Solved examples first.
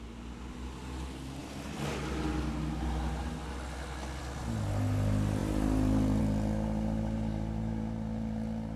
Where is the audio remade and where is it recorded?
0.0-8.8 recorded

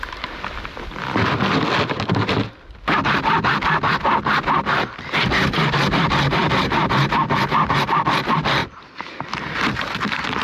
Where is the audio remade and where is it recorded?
0.0-6.4 recorded; 6.4-8.0 remade; 8.0-8.6 recorded; 8.6-9.3 remade; 9.3-10.4 recorded

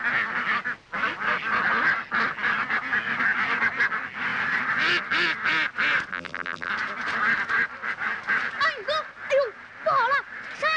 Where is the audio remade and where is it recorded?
0.0-6.1 recorded; 6.1-6.7 remade; 6.7-10.8 recorded

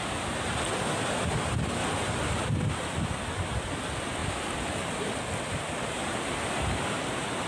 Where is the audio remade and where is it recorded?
0.0-7.5 recorded

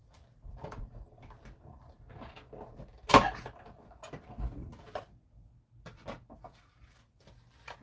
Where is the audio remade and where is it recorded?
0.0-0.8 remade; 0.8-7.8 recorded